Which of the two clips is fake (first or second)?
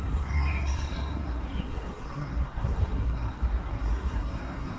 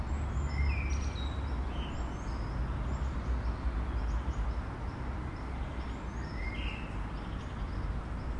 first